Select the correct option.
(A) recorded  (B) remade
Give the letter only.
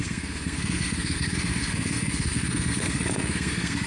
B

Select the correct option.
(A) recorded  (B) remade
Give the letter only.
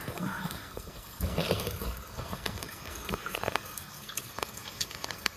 B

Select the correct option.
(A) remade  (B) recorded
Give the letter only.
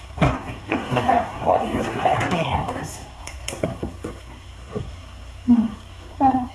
A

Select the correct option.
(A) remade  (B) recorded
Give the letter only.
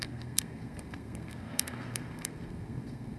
A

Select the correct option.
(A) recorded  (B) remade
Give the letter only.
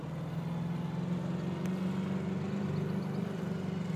A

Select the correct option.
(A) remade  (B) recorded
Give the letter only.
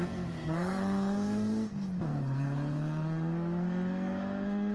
A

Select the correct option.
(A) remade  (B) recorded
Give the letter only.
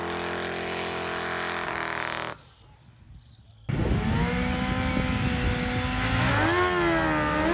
B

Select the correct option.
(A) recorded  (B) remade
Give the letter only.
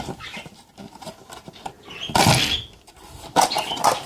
A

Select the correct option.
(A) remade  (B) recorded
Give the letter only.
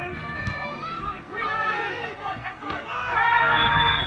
A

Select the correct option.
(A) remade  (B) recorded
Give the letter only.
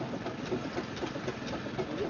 B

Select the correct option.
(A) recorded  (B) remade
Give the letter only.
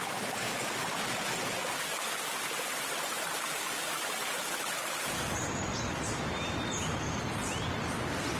A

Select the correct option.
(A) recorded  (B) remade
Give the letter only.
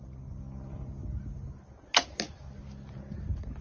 A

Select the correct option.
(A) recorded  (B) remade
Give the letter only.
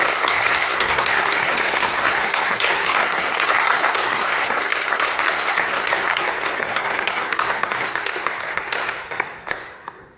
B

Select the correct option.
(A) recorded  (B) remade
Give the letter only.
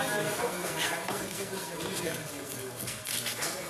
B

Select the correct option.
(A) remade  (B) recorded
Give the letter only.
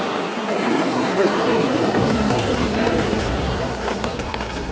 A